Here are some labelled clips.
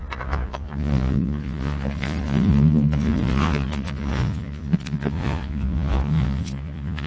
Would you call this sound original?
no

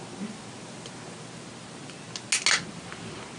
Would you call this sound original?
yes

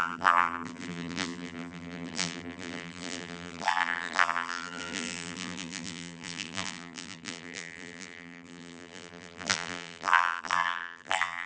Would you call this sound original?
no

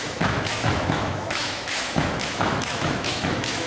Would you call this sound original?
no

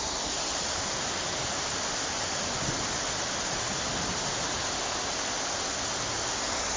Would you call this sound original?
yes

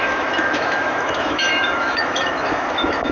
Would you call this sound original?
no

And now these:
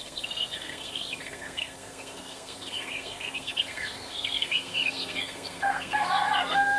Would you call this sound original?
no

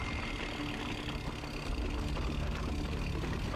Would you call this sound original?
yes